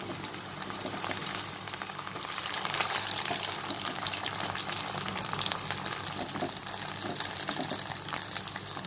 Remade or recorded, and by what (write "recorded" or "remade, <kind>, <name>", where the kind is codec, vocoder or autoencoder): recorded